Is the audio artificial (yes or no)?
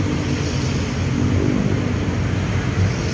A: no